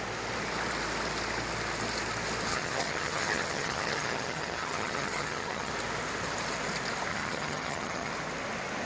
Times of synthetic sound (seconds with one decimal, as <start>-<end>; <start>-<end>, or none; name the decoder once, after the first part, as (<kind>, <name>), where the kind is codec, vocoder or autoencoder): 2.5-5.7 (vocoder, HiFi-GAN); 7.1-8.1